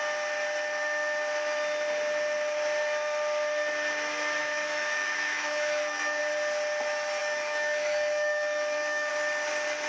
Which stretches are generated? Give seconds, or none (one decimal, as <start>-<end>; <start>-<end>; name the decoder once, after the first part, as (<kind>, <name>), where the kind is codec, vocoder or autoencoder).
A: 4.4-6.2 (autoencoder, DAC-VAE); 7.2-9.1